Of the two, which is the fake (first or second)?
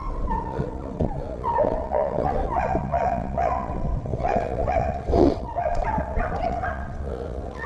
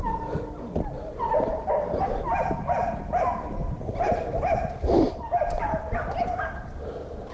first